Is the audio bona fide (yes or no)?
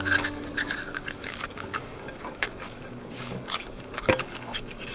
no